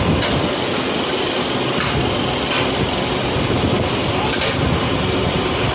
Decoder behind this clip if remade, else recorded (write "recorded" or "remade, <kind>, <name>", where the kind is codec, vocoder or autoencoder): recorded